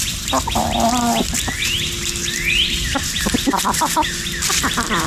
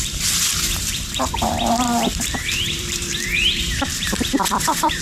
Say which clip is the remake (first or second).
second